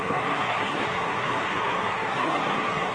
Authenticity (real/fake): fake